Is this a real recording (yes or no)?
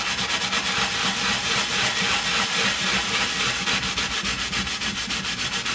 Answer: yes